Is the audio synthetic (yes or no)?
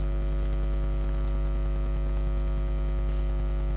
no